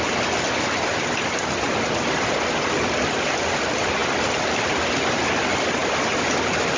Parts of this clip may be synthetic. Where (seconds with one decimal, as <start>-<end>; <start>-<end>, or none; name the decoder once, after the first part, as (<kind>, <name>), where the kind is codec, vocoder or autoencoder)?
4.0-5.0 (vocoder, BigVGAN v2)